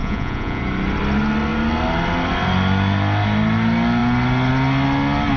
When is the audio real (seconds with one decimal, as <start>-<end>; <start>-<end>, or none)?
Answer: 0.6-5.4